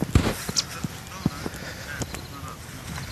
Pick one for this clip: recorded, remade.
recorded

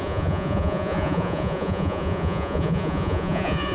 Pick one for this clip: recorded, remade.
remade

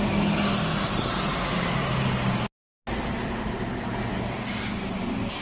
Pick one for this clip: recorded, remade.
recorded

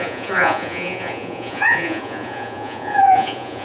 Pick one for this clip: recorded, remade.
remade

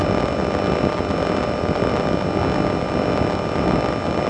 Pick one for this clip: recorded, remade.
recorded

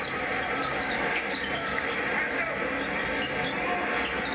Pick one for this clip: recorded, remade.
recorded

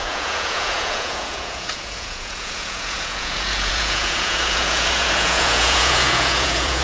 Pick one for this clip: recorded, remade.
remade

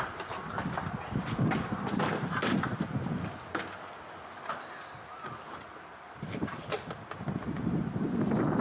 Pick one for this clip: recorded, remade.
recorded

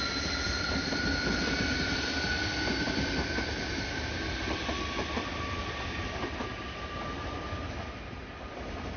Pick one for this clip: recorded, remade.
recorded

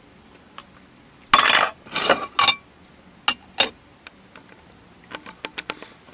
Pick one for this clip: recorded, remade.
recorded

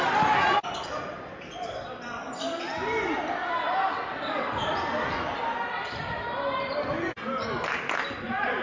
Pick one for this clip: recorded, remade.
recorded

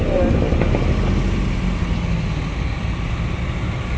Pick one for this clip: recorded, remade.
recorded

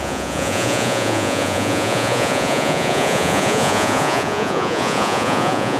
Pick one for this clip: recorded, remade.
remade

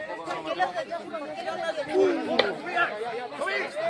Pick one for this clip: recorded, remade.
recorded